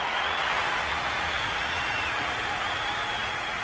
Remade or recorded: remade